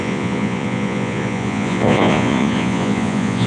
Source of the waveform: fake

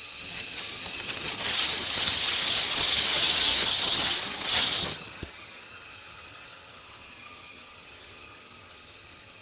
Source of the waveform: fake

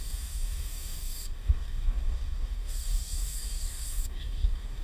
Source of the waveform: fake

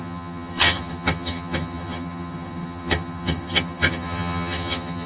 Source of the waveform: fake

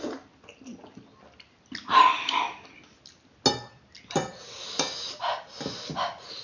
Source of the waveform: real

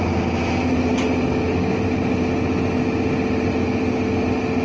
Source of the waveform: real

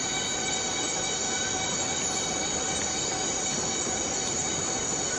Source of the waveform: real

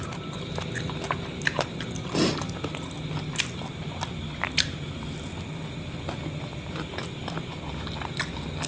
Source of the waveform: real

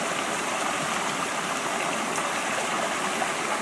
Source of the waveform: real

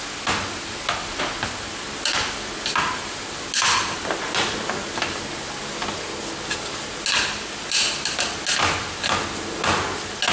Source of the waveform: real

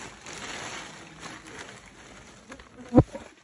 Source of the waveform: real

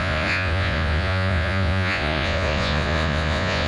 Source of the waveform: fake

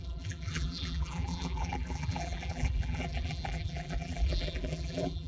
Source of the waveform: fake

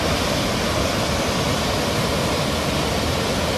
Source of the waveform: real